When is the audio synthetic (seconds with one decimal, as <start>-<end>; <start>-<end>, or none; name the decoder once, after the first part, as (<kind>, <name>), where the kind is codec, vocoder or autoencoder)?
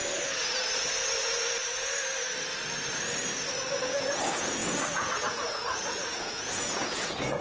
3.8-7.4 (vocoder, Vocos)